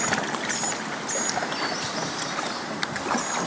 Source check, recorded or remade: recorded